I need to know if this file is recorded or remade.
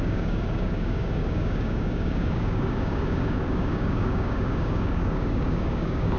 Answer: remade